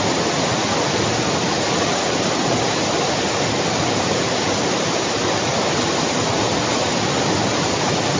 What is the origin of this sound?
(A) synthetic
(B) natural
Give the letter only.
B